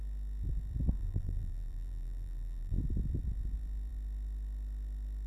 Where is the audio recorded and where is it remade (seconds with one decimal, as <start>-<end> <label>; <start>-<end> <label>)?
0.0-1.0 recorded; 1.0-2.8 remade; 2.8-5.3 recorded